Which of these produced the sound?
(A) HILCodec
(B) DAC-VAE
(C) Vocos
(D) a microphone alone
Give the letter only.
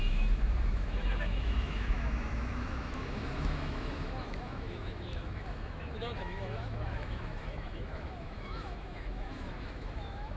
B